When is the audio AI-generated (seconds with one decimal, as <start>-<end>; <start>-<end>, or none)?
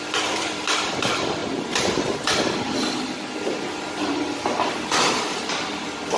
0.0-1.4; 5.1-6.2